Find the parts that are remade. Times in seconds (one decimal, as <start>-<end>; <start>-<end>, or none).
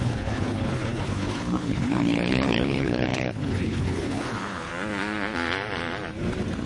0.0-4.7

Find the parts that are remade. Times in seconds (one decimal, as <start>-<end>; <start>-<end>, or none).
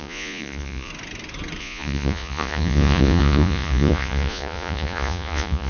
0.0-0.9; 1.6-5.7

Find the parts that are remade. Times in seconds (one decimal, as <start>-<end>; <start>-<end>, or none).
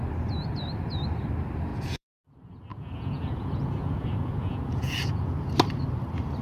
1.7-2.2; 2.7-5.5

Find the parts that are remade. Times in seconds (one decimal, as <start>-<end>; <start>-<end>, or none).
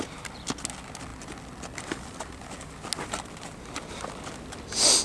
none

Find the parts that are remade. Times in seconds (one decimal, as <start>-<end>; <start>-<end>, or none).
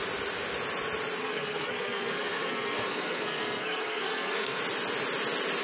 1.2-4.6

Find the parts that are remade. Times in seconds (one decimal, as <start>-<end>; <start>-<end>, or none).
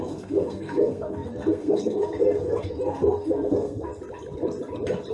0.0-3.9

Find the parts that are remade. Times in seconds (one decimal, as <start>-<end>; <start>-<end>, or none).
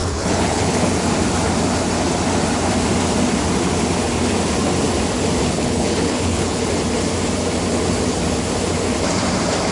0.0-0.9; 5.4-6.6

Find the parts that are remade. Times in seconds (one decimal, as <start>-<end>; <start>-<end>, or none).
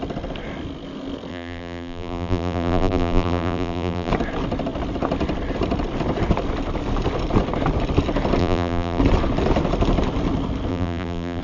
1.3-4.1; 8.4-9.0; 10.7-11.4